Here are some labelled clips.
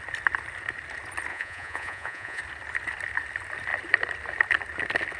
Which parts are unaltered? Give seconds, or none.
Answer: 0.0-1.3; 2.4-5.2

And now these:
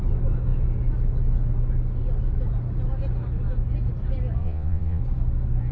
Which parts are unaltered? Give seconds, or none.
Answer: 0.0-4.4; 5.0-5.7

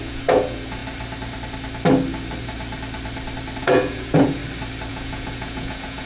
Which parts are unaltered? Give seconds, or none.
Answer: 0.8-3.6; 4.4-4.9

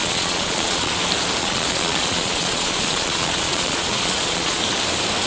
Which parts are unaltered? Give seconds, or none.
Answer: 0.9-1.4; 4.6-5.3

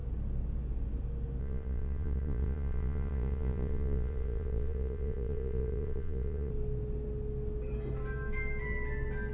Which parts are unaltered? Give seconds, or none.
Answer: 0.0-1.4; 6.5-9.3

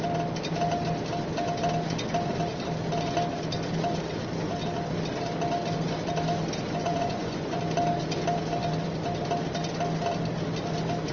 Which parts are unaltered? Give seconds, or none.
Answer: 0.0-6.8; 7.6-11.1

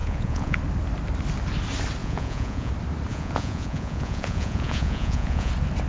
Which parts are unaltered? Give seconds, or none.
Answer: 0.6-2.0; 2.7-3.1; 5.5-5.9